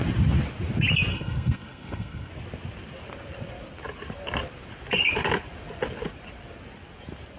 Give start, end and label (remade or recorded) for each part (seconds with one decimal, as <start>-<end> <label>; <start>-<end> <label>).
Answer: 0.0-1.1 recorded; 1.1-2.3 remade; 2.3-7.4 recorded